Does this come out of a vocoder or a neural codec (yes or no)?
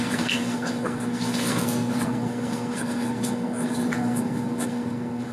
yes